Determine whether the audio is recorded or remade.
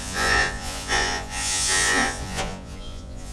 remade